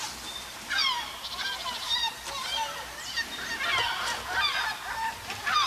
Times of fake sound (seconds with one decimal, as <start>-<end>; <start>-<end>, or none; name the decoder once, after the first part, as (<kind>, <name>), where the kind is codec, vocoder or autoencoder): 0.8-2.0 (vocoder, BigVGAN v2)